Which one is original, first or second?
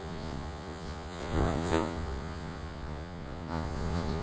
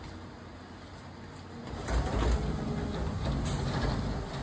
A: second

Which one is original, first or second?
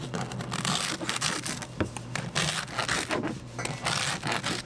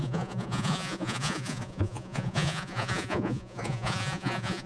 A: first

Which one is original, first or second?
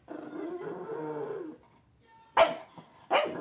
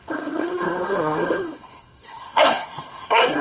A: first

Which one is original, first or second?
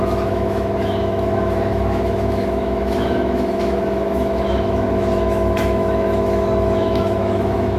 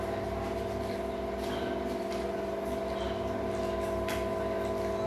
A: second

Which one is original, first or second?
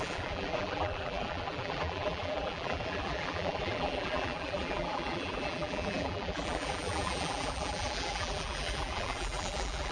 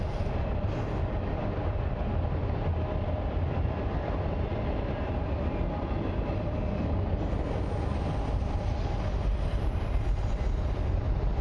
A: second